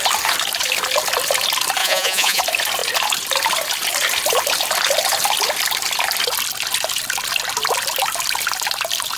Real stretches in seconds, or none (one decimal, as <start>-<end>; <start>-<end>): 0.0-1.8; 2.4-9.2